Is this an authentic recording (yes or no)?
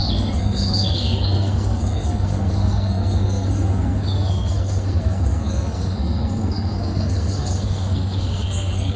no